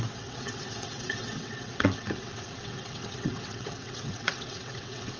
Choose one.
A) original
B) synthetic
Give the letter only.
B